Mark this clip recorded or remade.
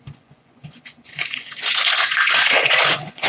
remade